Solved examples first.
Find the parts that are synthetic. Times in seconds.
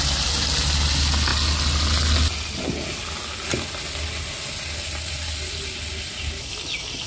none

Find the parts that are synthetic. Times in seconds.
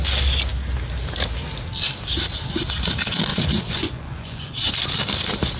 3.3-4.7 (vocoder, Vocos)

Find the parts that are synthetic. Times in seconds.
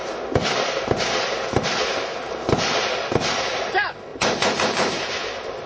4.1-5.0 (vocoder, BigVGAN v2)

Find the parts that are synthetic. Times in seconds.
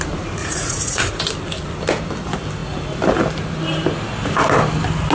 0.4-1.2 (vocoder, Vocos)